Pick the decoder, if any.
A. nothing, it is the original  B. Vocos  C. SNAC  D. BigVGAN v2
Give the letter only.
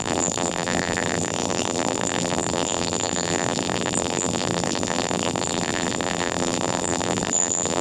D